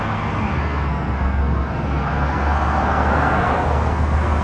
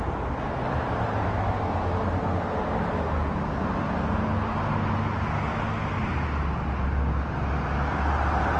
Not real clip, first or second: first